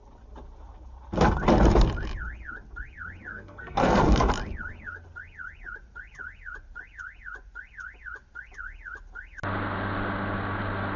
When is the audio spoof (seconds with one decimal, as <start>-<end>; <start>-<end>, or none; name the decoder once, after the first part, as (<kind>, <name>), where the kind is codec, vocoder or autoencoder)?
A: 3.3-4.3 (codec, SNAC)